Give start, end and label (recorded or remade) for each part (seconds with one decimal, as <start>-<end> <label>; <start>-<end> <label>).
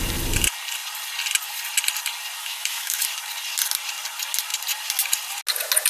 0.0-2.4 recorded; 2.4-3.0 remade; 3.0-5.9 recorded